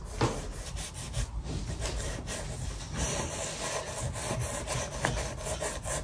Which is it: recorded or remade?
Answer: recorded